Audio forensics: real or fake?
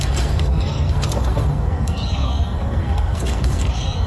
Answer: fake